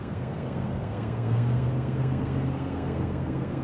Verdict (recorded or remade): remade